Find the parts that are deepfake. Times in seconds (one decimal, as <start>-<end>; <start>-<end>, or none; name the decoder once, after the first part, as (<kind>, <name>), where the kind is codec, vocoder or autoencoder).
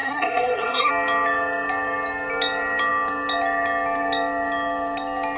0.0-0.9 (codec, SNAC)